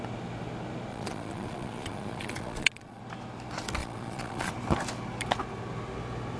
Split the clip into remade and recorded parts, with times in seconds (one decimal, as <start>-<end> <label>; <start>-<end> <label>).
0.0-0.9 recorded; 0.9-3.0 remade; 3.0-3.8 recorded; 3.8-4.5 remade; 4.5-6.4 recorded